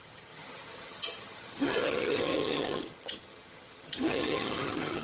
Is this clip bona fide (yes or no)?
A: no